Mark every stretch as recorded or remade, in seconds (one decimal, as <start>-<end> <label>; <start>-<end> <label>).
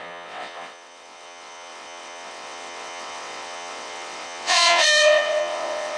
0.0-6.0 remade